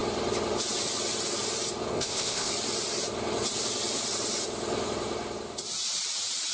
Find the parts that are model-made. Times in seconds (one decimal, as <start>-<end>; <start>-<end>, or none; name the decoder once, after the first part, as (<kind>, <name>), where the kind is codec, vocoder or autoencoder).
1.9-2.5 (codec, ZipCodec)